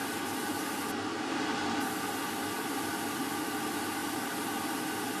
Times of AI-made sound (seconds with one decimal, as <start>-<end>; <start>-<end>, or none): none